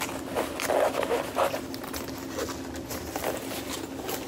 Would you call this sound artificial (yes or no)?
no